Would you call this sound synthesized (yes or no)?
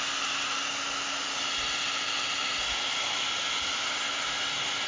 no